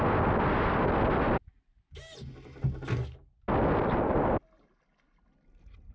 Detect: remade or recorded recorded